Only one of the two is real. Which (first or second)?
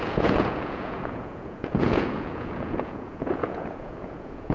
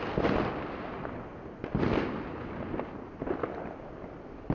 second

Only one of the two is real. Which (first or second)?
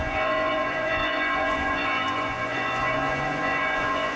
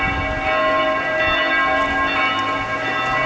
second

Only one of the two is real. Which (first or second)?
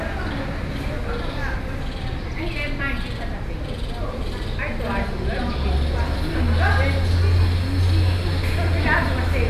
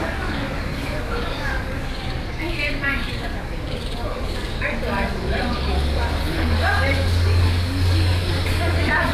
first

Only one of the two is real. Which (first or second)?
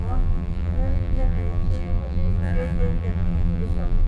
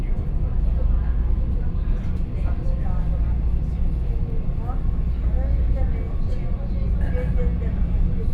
second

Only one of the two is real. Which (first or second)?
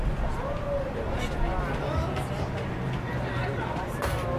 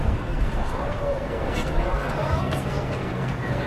first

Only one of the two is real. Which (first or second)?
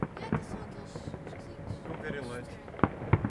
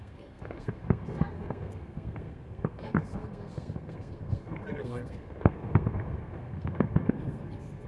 first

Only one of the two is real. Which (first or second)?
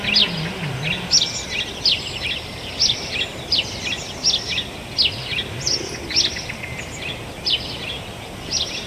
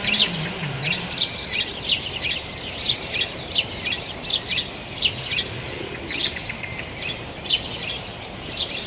first